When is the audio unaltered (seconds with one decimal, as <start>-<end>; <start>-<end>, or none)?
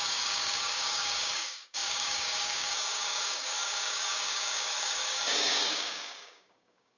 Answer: none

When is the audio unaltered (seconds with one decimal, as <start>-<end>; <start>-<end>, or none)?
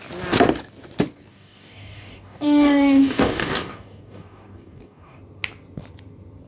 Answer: 0.0-1.3; 5.2-6.5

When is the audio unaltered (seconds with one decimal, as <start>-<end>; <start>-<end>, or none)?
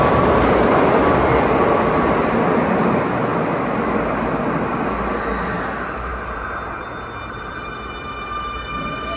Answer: 0.0-9.2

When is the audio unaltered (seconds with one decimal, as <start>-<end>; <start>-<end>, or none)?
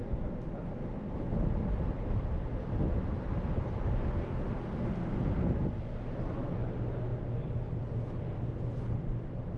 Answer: 0.0-9.6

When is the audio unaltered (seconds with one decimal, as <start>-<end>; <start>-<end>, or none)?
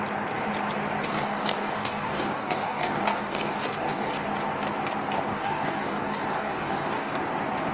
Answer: 0.0-1.0; 4.1-5.3; 7.1-7.7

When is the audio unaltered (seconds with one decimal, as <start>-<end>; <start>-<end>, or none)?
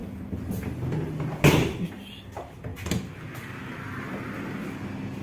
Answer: 0.0-5.2